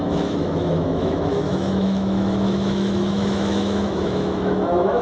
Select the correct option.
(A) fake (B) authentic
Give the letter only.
A